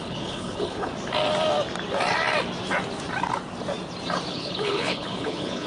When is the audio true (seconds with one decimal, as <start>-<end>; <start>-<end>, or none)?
0.9-4.3